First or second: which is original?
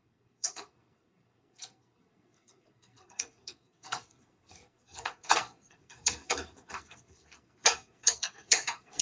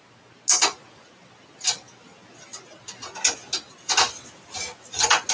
second